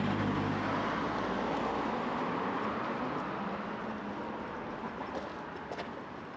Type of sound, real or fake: real